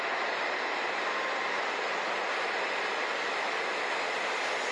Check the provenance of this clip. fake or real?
real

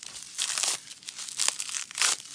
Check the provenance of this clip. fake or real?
real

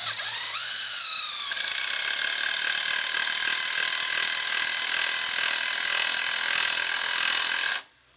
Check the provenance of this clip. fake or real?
real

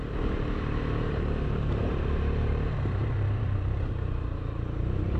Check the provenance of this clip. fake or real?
fake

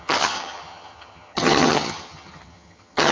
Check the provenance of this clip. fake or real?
fake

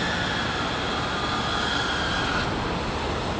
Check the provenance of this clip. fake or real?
real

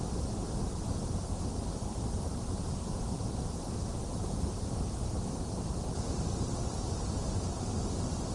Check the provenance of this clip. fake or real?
real